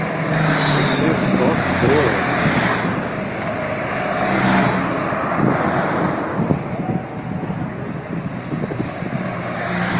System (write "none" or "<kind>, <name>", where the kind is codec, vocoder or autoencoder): none